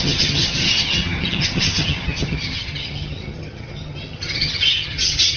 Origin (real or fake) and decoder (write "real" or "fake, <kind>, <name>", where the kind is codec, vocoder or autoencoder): fake, vocoder, HiFi-GAN